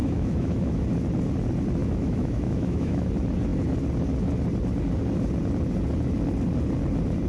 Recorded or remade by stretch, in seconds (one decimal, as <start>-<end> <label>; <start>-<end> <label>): 0.0-0.8 remade; 0.8-1.8 recorded; 1.8-3.1 remade; 3.1-7.3 recorded